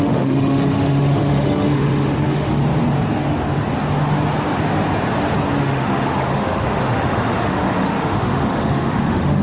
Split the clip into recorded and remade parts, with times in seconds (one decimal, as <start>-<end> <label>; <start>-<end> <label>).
0.0-2.6 remade; 2.6-5.6 recorded; 5.6-9.4 remade